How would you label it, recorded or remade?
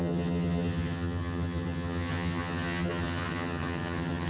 remade